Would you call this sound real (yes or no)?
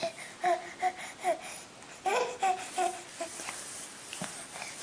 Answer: yes